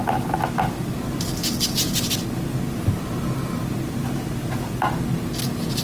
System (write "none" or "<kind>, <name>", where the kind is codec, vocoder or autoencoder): none